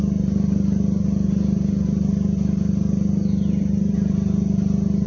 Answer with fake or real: real